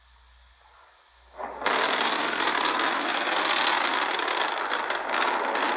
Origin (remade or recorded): recorded